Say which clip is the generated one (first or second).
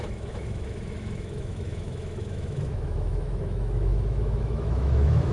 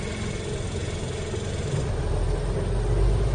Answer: first